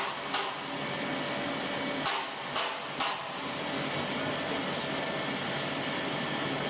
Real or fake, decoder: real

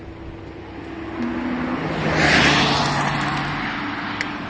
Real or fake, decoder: real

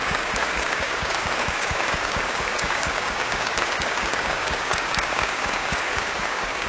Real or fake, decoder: fake, codec, DAC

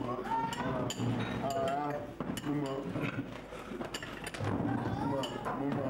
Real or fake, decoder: real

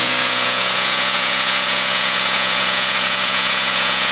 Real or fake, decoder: fake, vocoder, Vocos